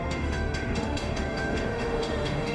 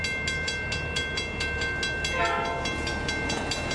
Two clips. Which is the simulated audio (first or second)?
first